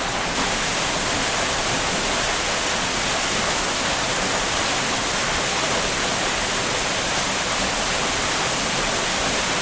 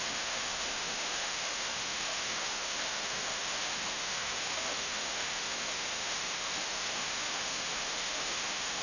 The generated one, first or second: second